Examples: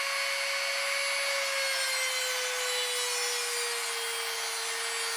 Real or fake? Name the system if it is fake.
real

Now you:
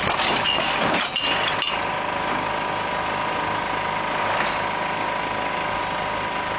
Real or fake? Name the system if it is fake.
real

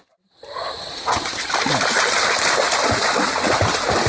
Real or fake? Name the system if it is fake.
real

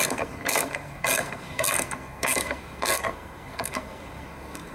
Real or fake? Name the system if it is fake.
fake, codec, SNAC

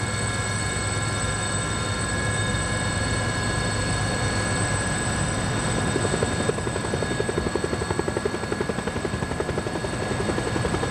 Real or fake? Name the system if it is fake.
real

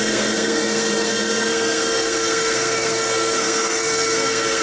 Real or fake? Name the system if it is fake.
fake, codec, SNAC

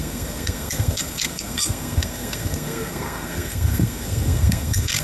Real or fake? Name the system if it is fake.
fake, codec, SNAC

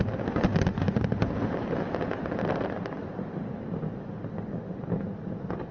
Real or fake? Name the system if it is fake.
real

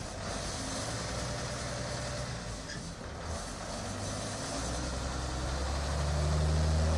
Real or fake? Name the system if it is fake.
real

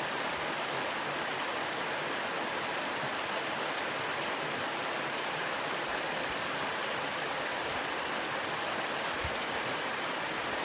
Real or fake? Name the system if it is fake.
real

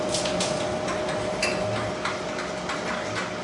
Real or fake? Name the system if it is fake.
real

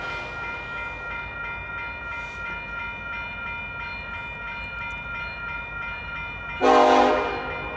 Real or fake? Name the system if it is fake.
real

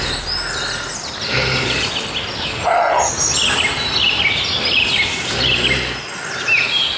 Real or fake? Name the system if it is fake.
real